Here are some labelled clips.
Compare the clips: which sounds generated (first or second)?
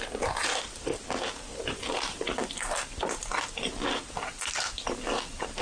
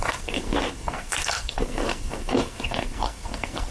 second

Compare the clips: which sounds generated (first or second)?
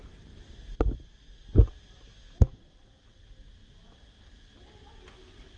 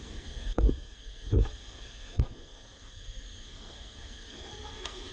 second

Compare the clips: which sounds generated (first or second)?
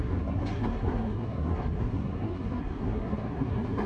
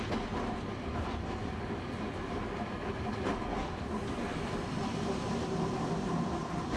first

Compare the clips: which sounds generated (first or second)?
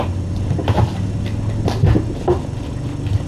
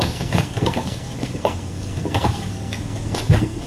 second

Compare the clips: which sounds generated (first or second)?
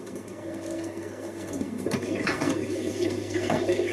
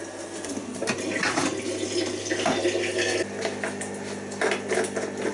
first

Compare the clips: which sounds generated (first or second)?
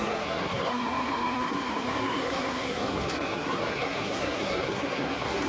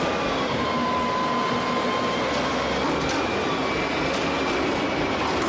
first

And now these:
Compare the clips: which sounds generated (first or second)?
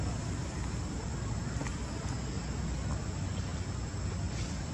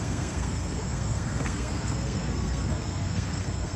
second